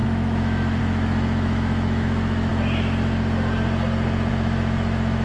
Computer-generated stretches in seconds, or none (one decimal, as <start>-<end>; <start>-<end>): 0.0-2.5; 4.3-5.2